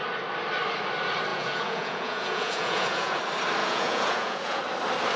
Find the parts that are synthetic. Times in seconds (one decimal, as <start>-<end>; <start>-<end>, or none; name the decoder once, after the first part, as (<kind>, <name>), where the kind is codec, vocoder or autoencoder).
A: 1.3-3.2 (vocoder, Vocos); 3.6-4.6